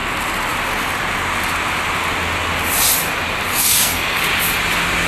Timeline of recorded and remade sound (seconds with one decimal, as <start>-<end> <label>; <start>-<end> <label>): 0.0-3.5 recorded; 3.5-4.2 remade; 4.2-5.1 recorded